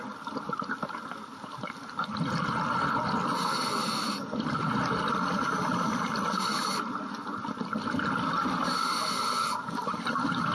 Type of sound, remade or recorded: recorded